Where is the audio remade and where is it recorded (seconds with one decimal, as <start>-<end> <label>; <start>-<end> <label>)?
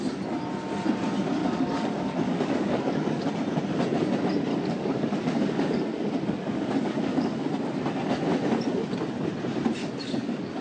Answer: 0.0-1.4 recorded; 1.4-3.3 remade; 3.3-4.5 recorded; 4.5-7.5 remade; 7.5-9.8 recorded; 9.8-10.6 remade